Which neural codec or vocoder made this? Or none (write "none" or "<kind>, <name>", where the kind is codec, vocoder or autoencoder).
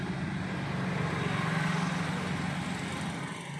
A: none